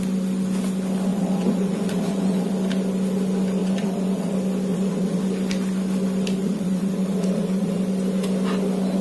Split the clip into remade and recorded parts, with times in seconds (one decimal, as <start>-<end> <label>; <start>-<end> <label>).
0.0-1.1 recorded; 1.1-2.5 remade; 2.5-3.6 recorded; 3.6-4.3 remade; 4.3-4.7 recorded; 4.7-5.2 remade; 5.2-6.4 recorded; 6.4-7.8 remade; 7.8-9.0 recorded